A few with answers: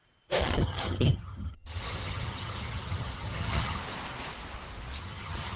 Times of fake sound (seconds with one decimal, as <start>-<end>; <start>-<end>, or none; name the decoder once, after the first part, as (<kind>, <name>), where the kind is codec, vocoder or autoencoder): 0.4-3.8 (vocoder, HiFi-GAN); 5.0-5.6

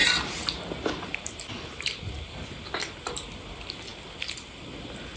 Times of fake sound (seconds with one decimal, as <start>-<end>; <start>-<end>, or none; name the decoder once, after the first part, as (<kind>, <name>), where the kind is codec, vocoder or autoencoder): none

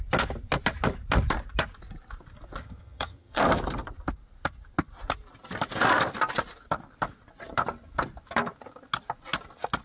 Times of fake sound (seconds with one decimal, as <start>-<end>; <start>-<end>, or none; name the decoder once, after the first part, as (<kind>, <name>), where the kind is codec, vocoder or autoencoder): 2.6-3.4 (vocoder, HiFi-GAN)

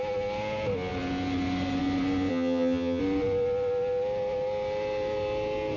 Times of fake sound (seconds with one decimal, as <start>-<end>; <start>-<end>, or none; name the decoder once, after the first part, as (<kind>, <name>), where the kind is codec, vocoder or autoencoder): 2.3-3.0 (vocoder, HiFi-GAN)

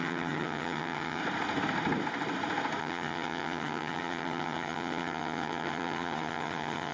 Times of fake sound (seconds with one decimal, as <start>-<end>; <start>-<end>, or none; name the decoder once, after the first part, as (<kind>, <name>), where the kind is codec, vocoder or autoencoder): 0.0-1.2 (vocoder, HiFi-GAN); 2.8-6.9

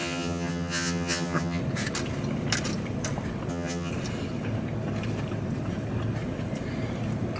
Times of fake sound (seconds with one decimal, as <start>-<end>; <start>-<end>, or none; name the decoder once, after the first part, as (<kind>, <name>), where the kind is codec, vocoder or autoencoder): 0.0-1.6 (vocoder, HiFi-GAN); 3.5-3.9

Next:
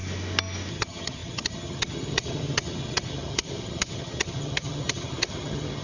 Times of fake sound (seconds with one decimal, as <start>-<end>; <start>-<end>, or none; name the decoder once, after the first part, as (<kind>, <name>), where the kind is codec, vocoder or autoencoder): 0.7-5.8 (vocoder, HiFi-GAN)

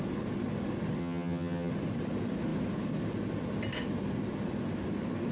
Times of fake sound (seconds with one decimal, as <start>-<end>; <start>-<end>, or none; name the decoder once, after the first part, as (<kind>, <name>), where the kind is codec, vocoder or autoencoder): 1.0-1.7 (vocoder, HiFi-GAN)